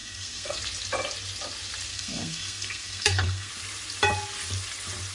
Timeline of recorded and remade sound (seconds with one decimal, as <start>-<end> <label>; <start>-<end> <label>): 0.0-0.6 remade; 0.6-1.9 recorded; 1.9-3.5 remade; 3.5-5.1 recorded